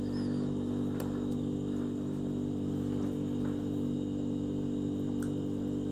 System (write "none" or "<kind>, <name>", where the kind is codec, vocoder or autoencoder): none